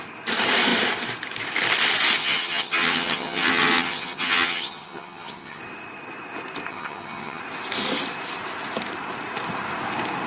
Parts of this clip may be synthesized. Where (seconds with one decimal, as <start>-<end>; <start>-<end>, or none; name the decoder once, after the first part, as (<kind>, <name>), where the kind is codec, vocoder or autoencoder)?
2.2-5.6 (vocoder, HiFi-GAN); 6.7-7.4